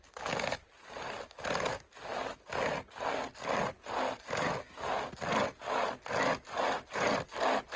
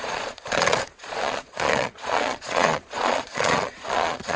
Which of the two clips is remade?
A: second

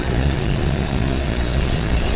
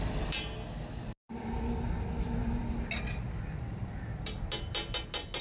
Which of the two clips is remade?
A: first